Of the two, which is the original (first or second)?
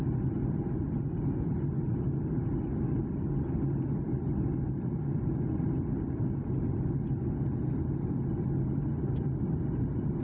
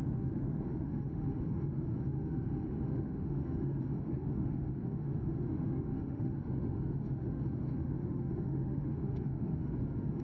first